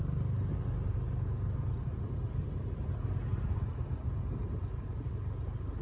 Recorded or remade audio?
recorded